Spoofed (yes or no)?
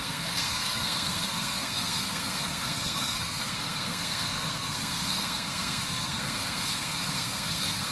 yes